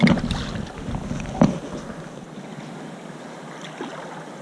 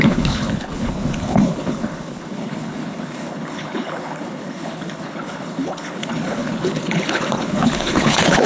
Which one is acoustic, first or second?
first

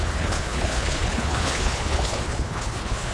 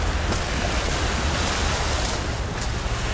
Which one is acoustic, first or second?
second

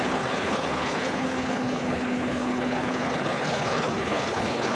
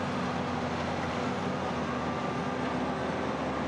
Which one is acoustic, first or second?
second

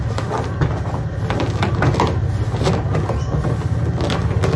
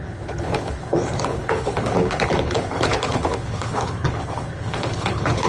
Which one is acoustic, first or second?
first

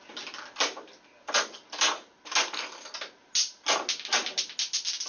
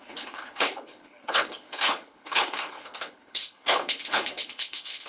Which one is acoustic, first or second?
first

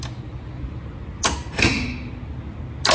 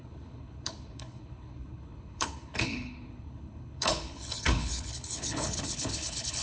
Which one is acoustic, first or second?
first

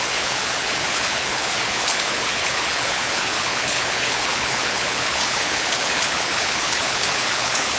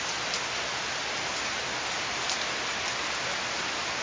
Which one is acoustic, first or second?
second